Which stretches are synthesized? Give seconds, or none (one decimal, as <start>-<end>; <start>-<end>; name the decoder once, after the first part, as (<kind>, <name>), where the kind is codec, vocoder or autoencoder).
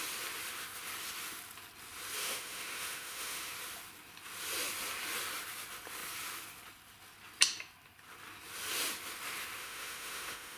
2.2-3.5 (autoencoder, DAC-VAE); 9.6-10.6